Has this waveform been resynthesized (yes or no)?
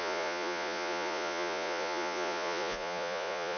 yes